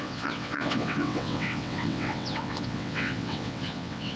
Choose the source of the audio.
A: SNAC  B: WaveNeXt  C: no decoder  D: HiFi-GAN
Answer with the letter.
B